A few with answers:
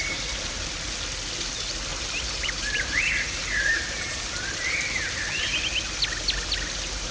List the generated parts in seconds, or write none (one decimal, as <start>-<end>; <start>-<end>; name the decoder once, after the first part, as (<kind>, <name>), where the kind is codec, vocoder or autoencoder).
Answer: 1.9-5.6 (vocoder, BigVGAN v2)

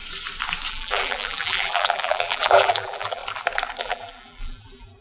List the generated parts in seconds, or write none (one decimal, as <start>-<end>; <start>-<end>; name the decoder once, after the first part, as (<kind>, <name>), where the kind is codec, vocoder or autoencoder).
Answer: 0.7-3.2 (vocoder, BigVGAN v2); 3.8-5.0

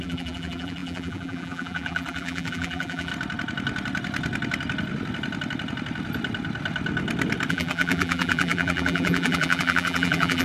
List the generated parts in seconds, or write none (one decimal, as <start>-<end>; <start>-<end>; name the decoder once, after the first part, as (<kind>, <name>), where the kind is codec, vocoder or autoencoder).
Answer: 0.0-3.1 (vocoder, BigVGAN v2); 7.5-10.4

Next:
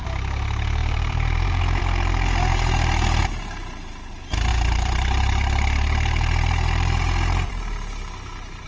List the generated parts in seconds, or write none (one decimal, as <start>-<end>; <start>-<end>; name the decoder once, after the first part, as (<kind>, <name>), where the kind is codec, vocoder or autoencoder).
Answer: 0.8-1.8 (vocoder, BigVGAN v2); 2.5-3.2; 4.5-7.5